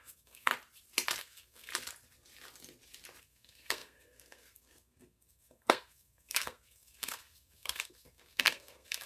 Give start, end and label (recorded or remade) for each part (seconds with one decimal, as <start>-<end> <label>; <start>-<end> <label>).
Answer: 0.0-0.5 remade; 0.5-1.2 recorded; 1.2-1.7 remade; 1.7-3.2 recorded; 3.2-9.1 remade

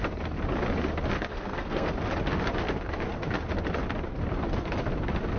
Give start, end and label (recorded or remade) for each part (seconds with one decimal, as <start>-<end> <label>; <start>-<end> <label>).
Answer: 0.0-1.3 recorded; 1.3-1.9 remade; 1.9-5.4 recorded

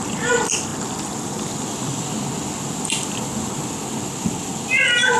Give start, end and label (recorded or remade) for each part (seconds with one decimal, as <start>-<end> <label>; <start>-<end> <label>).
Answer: 0.0-5.2 recorded

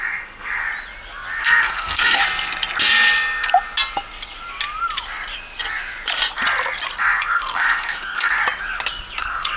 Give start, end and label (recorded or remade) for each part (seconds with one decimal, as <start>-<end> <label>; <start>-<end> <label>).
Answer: 0.0-0.6 remade; 0.6-1.4 recorded; 1.4-2.2 remade; 2.2-7.0 recorded; 7.0-8.4 remade; 8.4-9.2 recorded; 9.2-9.6 remade

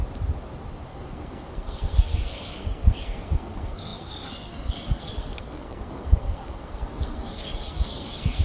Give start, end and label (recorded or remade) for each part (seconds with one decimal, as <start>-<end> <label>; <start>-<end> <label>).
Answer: 0.0-0.9 recorded; 0.9-8.4 remade

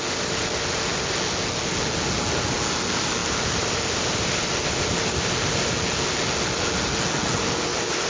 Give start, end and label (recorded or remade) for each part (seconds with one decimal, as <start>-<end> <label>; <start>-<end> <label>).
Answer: 0.0-8.1 recorded

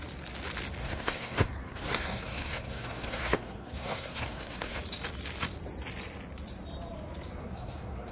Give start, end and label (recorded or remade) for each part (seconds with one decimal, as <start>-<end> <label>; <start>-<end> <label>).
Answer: 0.0-0.8 recorded; 0.8-4.8 remade; 4.8-7.4 recorded; 7.4-8.1 remade